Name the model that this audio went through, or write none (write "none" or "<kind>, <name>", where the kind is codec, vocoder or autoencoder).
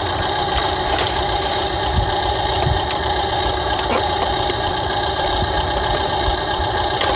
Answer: vocoder, BigVGAN v2